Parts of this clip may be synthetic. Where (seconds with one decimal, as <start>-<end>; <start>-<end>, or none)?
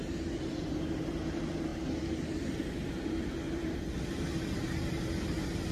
none